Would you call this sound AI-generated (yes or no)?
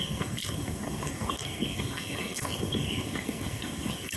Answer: yes